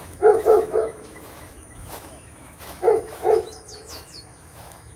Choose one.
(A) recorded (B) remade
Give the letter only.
B